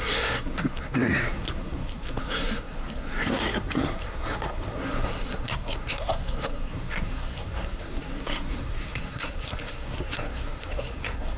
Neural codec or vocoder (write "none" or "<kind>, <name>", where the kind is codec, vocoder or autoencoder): codec, SNAC